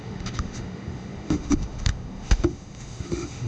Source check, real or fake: fake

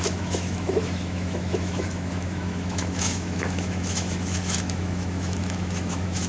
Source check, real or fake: fake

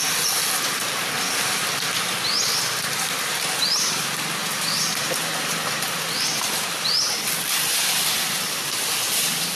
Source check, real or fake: real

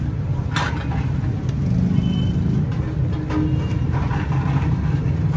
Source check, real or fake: real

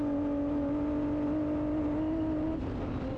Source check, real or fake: real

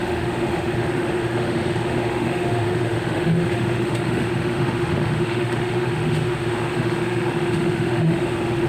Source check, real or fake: fake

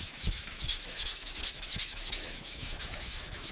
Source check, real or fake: fake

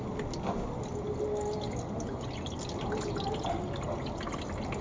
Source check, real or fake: real